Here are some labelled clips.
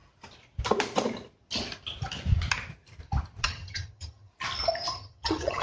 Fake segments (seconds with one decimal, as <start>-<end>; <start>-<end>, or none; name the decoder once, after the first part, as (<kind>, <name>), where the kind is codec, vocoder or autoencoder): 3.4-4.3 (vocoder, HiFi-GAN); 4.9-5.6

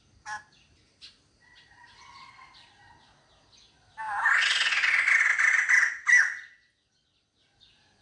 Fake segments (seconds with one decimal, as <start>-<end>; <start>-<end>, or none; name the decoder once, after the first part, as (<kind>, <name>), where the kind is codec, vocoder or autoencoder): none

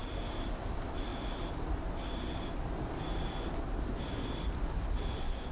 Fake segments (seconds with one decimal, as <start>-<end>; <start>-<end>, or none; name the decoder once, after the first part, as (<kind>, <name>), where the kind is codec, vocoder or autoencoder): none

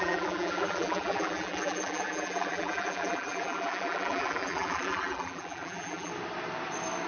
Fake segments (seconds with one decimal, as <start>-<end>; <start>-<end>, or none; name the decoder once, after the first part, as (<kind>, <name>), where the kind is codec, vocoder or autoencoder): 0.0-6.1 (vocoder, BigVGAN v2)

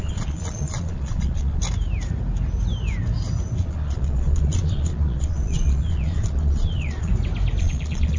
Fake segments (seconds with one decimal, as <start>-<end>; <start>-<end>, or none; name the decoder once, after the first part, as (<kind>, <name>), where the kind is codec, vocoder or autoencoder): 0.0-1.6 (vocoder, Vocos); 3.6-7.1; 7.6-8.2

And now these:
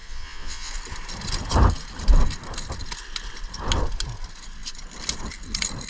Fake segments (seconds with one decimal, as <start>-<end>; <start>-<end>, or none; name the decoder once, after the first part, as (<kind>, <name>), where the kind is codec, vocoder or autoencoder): 0.0-0.7 (vocoder, Vocos)